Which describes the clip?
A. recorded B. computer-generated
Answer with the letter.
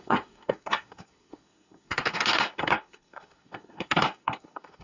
B